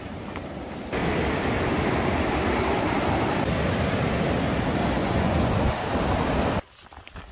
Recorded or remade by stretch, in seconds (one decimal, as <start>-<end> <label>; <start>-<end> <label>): 0.0-5.0 recorded; 5.0-5.5 remade; 5.5-7.3 recorded

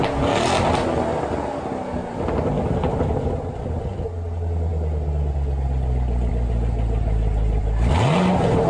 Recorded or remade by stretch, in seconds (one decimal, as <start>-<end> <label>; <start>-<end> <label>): 0.0-8.7 recorded

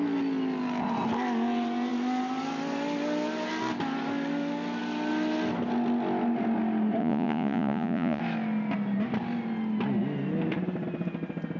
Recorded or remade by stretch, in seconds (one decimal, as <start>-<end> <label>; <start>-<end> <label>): 0.0-7.0 recorded; 7.0-8.2 remade; 8.2-11.6 recorded

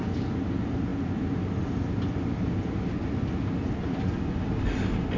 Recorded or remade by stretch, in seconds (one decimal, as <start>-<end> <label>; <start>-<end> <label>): 0.0-5.2 recorded

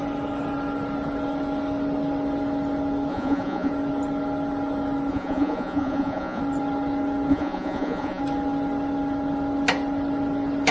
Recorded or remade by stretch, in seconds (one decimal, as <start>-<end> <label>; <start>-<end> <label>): 0.0-3.1 recorded; 3.1-3.7 remade; 3.7-5.1 recorded; 5.1-6.4 remade; 6.4-7.3 recorded; 7.3-8.2 remade; 8.2-10.7 recorded

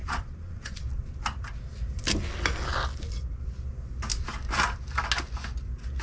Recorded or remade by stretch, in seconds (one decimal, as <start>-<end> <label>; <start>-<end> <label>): 0.0-0.9 remade; 0.9-6.0 recorded